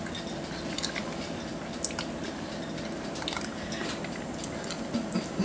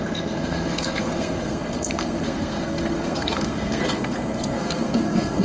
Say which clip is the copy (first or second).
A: second